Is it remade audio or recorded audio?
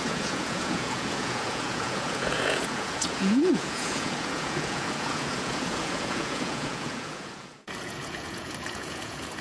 remade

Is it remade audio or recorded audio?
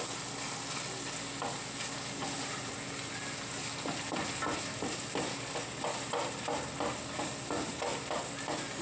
recorded